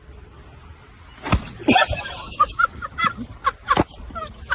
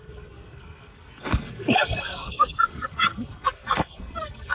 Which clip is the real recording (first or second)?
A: first